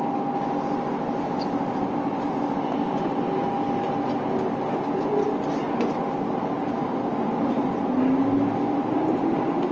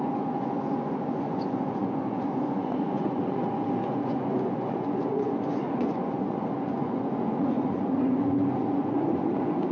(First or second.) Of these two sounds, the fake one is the second